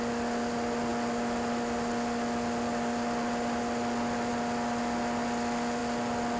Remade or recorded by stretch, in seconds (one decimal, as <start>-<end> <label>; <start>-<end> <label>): 0.0-6.4 recorded